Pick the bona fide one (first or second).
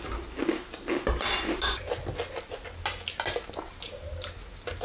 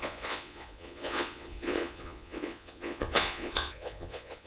first